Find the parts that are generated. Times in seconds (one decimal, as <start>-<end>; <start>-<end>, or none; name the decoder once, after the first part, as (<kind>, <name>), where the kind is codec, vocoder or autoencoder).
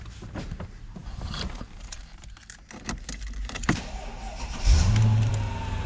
1.0-3.0 (vocoder, BigVGAN v2); 3.4-5.3